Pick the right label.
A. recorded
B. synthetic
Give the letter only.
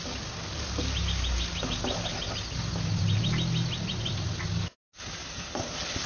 A